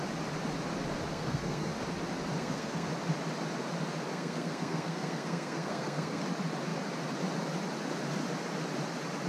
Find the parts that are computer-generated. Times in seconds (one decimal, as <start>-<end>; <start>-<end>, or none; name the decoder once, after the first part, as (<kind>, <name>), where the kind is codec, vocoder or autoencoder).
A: 1.1-1.7 (codec, SNAC); 2.4-2.9; 4.1-6.2